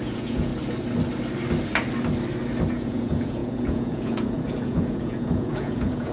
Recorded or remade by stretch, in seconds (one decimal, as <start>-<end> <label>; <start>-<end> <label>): 0.0-0.5 remade; 0.5-2.7 recorded; 2.7-6.1 remade